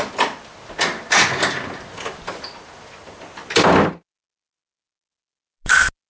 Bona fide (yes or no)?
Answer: yes